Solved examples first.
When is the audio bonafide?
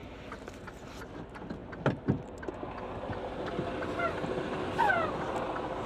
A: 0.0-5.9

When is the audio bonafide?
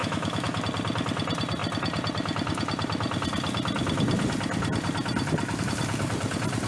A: 0.6-6.7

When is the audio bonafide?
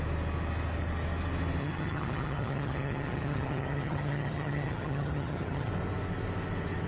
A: 0.0-1.6; 5.7-6.9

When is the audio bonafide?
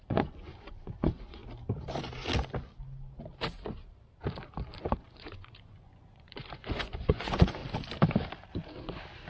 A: 1.4-4.8; 7.6-9.3